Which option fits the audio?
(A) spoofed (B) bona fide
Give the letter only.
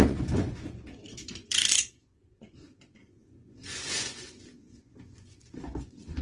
A